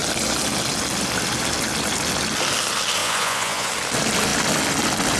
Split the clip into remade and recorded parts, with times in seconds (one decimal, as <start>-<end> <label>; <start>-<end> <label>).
0.0-3.0 recorded; 3.0-3.7 remade; 3.7-5.2 recorded